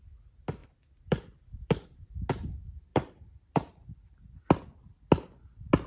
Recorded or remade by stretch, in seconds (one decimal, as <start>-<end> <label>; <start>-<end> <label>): 0.0-0.6 recorded; 0.6-2.1 remade; 2.1-2.9 recorded; 2.9-4.4 remade; 4.4-5.9 recorded